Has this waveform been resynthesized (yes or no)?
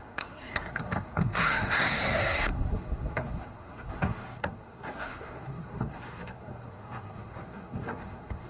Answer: yes